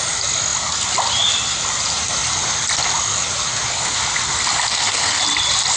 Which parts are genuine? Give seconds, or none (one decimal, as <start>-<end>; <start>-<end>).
0.0-4.7; 5.2-5.8